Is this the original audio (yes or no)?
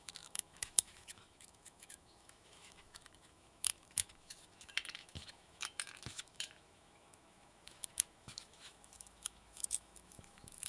no